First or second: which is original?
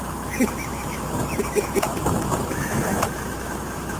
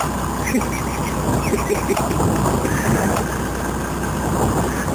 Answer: second